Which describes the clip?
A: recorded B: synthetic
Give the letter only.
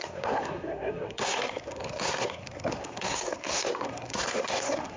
B